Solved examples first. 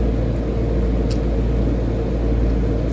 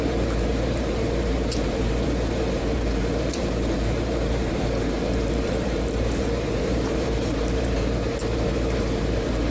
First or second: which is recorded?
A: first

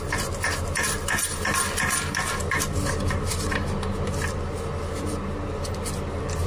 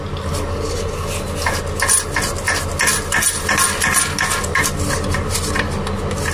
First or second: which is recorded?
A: second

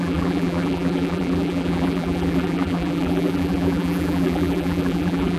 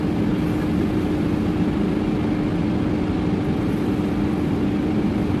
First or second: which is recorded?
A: second